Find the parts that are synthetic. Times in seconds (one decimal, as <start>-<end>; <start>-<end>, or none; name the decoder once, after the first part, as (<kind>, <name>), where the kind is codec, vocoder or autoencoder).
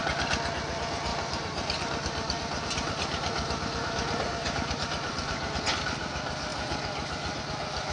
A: 1.1-5.6 (vocoder, BigVGAN v2); 6.5-7.4